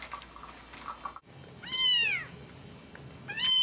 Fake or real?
real